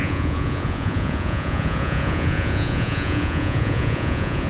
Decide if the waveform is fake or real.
fake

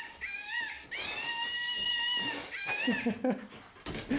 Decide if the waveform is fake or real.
real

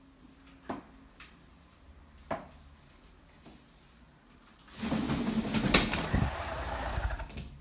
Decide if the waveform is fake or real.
real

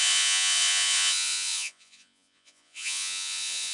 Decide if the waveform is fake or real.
fake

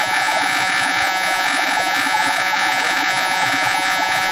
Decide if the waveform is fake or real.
fake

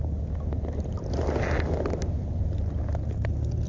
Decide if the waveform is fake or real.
real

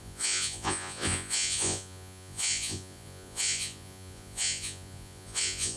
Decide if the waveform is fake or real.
fake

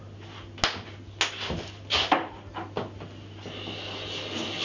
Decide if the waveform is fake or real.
real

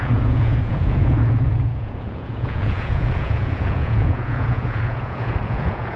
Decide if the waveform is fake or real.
fake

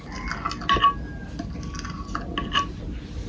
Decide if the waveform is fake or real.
real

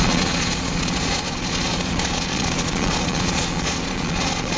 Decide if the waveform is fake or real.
fake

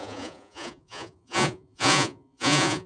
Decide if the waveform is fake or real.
fake